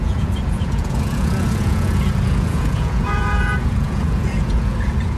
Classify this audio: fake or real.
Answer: fake